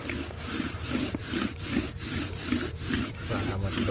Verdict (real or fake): real